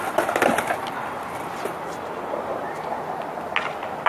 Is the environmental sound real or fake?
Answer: real